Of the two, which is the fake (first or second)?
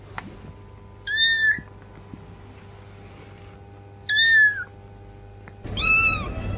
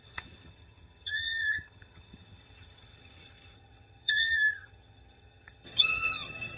second